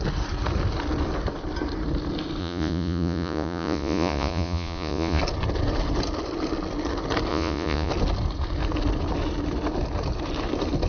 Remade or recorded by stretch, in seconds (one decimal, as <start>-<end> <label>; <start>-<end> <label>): 0.0-2.4 recorded; 2.4-5.2 remade; 5.2-7.3 recorded; 7.3-7.9 remade; 7.9-10.9 recorded